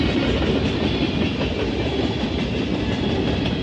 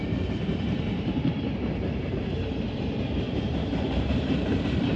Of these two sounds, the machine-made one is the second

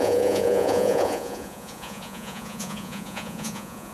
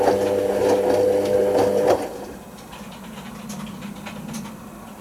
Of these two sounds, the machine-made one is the first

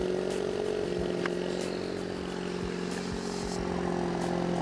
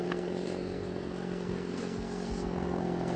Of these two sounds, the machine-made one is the second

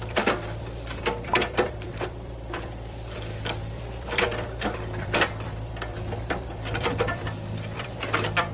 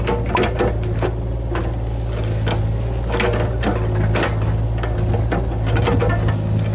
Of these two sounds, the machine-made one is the first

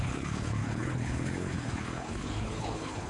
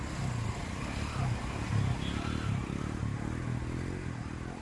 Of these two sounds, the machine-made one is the first